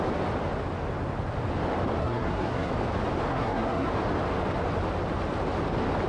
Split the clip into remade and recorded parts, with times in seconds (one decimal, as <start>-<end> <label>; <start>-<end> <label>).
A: 0.0-2.0 recorded; 2.0-2.7 remade; 2.7-3.3 recorded; 3.3-3.9 remade; 3.9-6.1 recorded